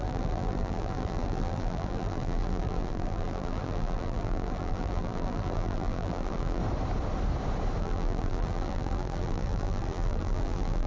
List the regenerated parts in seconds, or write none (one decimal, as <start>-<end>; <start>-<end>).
0.0-6.6; 7.8-10.9